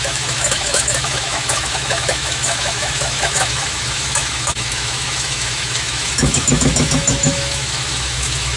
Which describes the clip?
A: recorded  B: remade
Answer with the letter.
B